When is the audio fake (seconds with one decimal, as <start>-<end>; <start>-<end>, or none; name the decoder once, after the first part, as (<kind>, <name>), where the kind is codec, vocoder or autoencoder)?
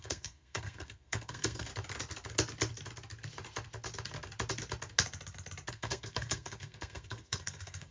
0.0-1.7 (codec, SNAC); 5.7-7.9